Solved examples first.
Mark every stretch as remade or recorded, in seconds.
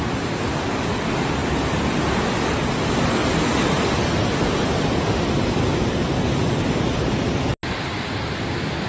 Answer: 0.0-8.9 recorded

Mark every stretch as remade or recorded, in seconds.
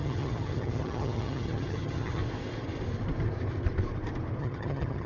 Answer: 0.0-2.2 remade; 2.2-4.4 recorded; 4.4-5.1 remade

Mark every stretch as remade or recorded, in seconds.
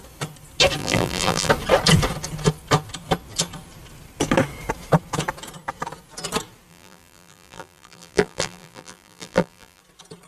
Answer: 0.0-0.8 recorded; 0.8-1.5 remade; 1.5-6.7 recorded; 6.7-9.8 remade; 9.8-10.3 recorded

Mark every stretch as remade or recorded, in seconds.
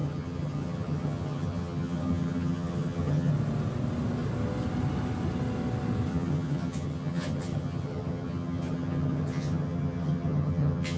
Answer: 0.0-3.3 remade; 3.3-6.1 recorded; 6.1-11.0 remade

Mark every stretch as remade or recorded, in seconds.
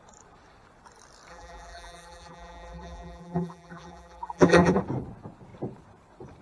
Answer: 0.0-1.3 recorded; 1.3-4.8 remade; 4.8-6.4 recorded